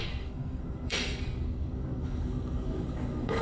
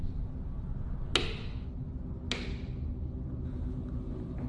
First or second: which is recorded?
second